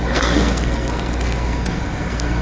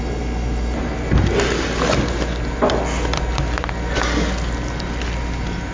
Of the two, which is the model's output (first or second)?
first